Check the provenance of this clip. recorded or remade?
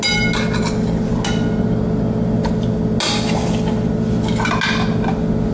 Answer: recorded